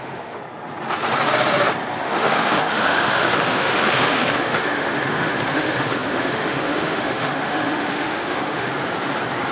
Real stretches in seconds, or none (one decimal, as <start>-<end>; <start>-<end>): 0.4-2.0; 8.7-9.5